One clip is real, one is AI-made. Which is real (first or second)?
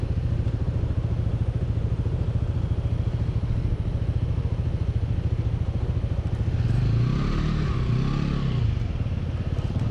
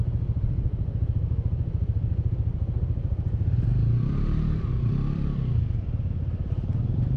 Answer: first